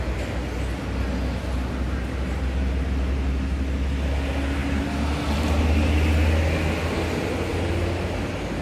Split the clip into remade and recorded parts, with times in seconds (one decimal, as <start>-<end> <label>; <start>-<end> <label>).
0.0-8.6 recorded